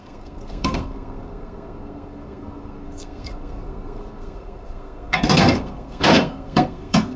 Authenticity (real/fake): fake